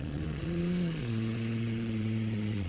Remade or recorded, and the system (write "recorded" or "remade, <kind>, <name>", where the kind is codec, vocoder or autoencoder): remade, vocoder, Vocos